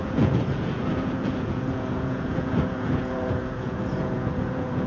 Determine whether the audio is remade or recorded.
remade